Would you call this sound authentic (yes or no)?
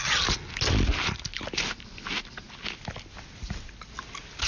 yes